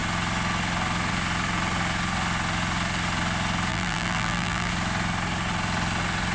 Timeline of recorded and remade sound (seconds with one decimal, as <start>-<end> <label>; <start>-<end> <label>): 0.0-3.7 recorded; 3.7-4.7 remade; 4.7-6.3 recorded